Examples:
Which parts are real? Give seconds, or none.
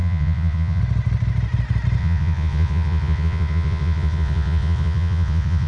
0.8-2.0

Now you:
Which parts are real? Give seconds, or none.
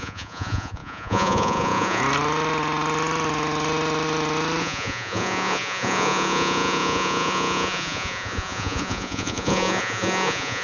2.0-4.6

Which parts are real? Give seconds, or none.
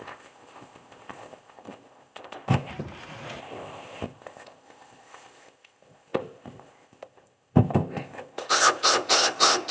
2.7-3.4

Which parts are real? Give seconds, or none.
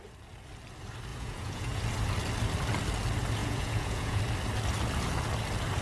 0.0-1.1; 1.8-3.4; 4.2-5.8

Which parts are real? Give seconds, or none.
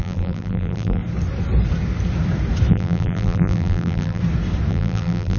1.0-2.7; 4.2-4.7